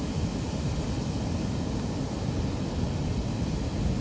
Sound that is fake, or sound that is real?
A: real